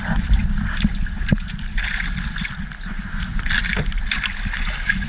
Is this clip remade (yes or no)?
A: no